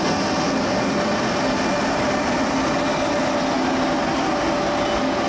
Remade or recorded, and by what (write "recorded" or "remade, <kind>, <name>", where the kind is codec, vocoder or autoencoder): recorded